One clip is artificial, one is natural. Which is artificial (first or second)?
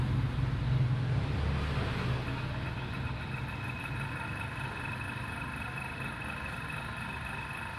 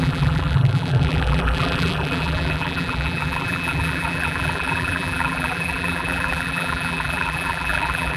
second